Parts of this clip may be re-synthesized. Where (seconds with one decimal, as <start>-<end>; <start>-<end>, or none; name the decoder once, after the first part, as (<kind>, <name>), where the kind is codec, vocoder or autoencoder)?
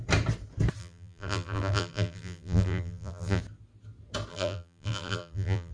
0.8-3.4 (vocoder, BigVGAN v2); 4.3-5.7